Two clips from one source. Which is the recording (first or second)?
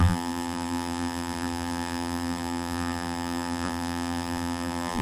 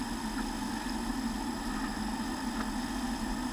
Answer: second